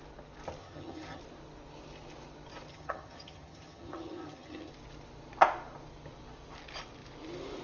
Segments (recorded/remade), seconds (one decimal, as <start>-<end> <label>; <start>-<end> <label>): 0.0-0.6 recorded; 0.6-1.2 remade; 1.2-2.7 recorded; 2.7-4.7 remade; 4.7-7.6 recorded